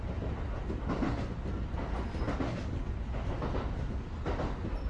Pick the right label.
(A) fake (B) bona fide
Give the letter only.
B